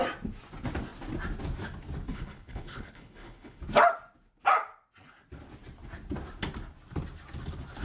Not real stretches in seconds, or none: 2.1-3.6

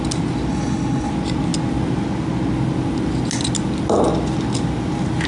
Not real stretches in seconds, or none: 0.5-1.1

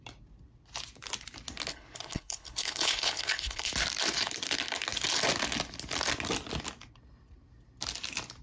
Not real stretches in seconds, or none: 1.7-3.7

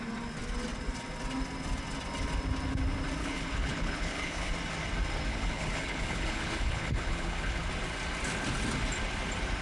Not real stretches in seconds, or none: 3.2-4.5; 5.3-7.7

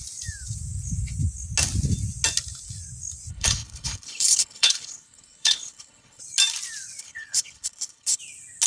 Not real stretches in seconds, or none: 3.3-6.2; 7.0-8.2

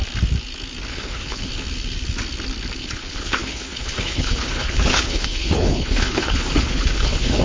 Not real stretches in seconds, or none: 0.9-1.5; 2.8-7.4

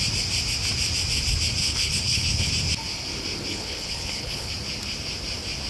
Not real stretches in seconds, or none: 1.6-2.5; 3.5-4.5

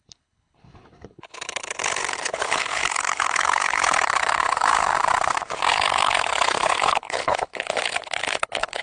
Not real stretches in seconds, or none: 0.0-4.9; 5.7-8.8